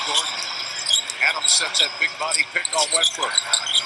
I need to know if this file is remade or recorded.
recorded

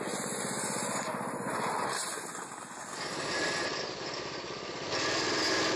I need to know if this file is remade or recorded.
recorded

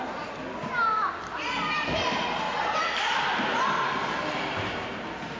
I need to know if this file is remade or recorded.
recorded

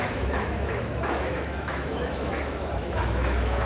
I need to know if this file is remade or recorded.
remade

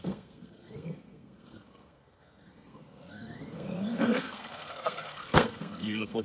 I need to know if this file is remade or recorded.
remade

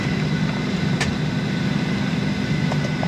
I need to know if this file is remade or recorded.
recorded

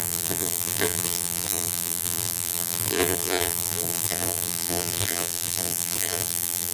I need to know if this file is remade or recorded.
remade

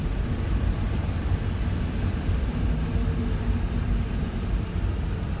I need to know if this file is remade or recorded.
remade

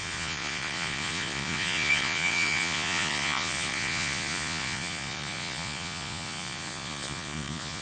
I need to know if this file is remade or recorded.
remade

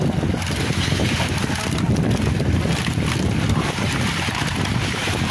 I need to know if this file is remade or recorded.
recorded